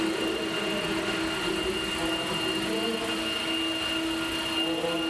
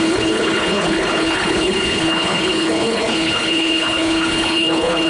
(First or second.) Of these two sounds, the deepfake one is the second